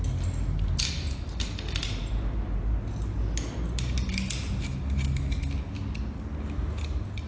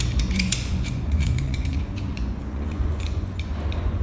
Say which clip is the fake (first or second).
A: second